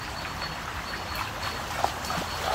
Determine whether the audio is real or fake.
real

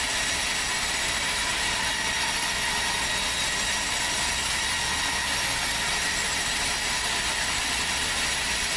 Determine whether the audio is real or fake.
real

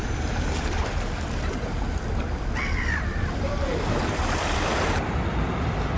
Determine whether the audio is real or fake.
fake